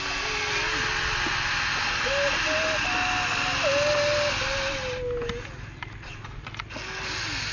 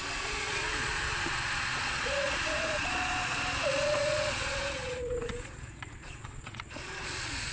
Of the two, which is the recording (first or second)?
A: first